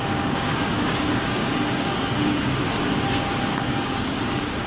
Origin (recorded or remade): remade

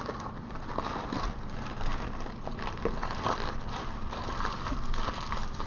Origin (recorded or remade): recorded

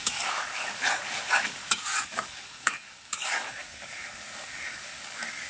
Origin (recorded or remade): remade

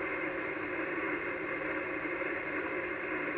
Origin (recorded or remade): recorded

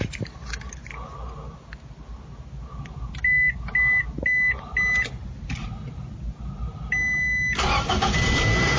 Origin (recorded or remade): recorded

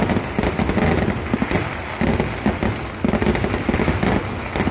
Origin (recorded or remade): recorded